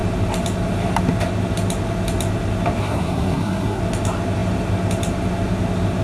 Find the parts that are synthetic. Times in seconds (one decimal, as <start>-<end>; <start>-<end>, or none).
2.8-3.8